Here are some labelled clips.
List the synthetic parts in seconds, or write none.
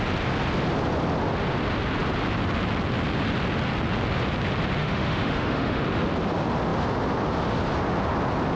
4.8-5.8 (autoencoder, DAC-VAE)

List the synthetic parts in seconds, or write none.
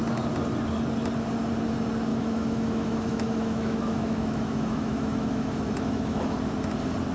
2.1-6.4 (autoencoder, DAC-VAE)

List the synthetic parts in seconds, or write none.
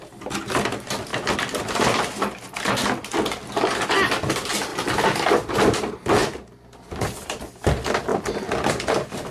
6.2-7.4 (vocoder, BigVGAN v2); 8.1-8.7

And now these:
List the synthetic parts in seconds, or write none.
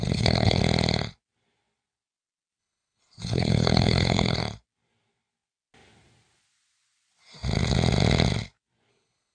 0.0-0.6 (codec, HILCodec); 2.6-4.4; 8.9-9.3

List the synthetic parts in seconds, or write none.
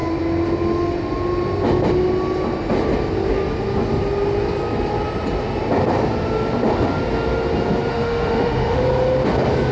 7.9-8.8 (autoencoder, DAC-VAE)